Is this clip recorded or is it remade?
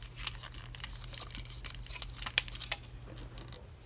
recorded